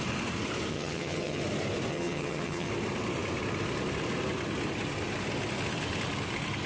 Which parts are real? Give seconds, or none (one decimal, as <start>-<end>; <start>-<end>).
0.0-0.7; 1.4-1.9; 2.7-6.7